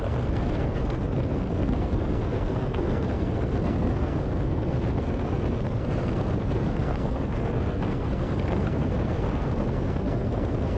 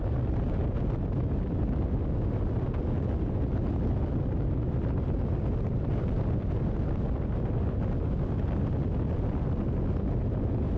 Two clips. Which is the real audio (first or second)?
second